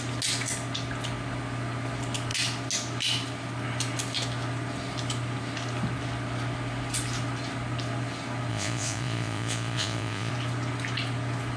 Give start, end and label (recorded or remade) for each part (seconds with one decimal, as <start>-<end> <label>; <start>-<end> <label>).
0.0-8.5 recorded; 8.5-10.3 remade; 10.3-11.6 recorded